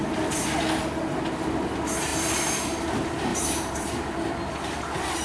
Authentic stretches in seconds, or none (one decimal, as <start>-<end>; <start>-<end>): 0.0-2.1; 2.6-3.3; 4.3-5.2